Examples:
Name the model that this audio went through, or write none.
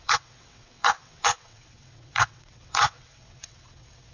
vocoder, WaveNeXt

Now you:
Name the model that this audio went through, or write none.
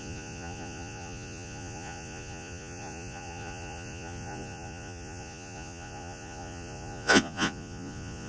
vocoder, Vocos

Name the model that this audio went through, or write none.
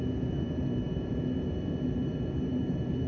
vocoder, BigVGAN v2